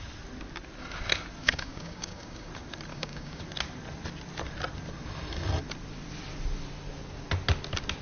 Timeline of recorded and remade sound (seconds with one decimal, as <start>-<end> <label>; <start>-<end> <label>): 0.0-1.4 recorded; 1.4-2.5 remade; 2.5-2.9 recorded; 2.9-3.4 remade; 3.4-8.0 recorded